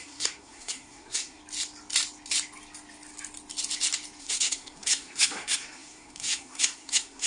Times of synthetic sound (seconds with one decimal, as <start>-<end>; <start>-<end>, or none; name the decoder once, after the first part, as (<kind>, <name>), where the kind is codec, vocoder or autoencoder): 0.0-1.4 (codec, SNAC); 4.2-7.3